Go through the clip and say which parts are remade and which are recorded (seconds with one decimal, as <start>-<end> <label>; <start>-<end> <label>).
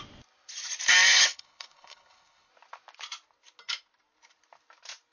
0.0-1.1 recorded; 1.1-2.5 remade; 2.5-5.1 recorded